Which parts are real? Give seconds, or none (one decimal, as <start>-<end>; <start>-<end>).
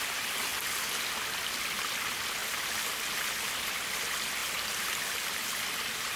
0.0-4.4; 5.6-6.2